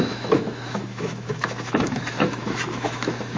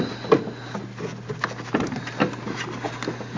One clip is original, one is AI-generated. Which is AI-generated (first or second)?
first